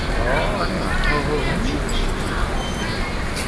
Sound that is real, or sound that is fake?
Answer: real